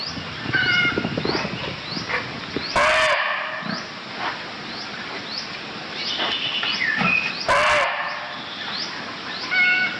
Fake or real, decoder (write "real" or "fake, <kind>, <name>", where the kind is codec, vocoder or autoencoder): real